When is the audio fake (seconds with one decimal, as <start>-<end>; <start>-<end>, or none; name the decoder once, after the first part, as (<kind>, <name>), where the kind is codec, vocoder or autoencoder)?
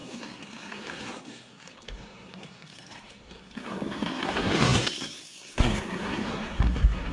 0.0-7.1 (codec, SNAC)